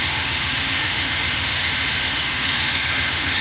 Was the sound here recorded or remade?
remade